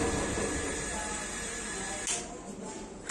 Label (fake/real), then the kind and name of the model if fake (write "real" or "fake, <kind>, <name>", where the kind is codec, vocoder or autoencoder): real